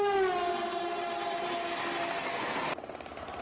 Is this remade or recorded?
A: recorded